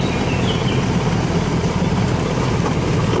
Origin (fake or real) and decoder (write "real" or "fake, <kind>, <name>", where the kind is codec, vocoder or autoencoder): real